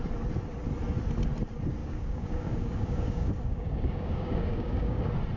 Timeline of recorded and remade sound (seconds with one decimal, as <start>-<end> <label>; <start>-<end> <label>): 0.0-1.8 recorded; 1.8-5.0 remade; 5.0-5.4 recorded